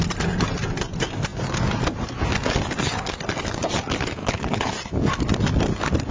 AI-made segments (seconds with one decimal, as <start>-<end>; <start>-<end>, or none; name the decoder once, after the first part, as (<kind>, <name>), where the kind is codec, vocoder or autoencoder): 4.2-4.7 (codec, HILCodec)